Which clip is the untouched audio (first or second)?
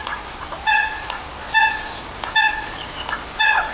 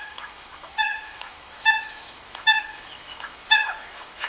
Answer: first